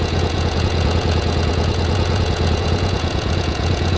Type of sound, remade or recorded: remade